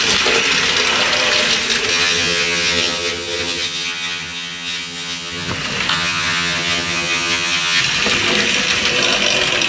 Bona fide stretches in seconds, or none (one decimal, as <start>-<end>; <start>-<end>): 0.0-1.9; 5.5-5.9; 7.8-9.7